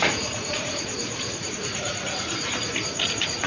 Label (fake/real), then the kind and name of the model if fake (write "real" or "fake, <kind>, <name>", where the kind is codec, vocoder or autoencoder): fake, vocoder, Vocos